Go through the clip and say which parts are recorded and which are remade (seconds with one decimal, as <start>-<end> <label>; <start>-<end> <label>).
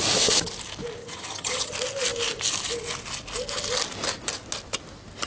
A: 0.0-1.0 recorded; 1.0-1.7 remade; 1.7-5.3 recorded